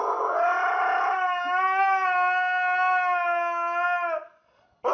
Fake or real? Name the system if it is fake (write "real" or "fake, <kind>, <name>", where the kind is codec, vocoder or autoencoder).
real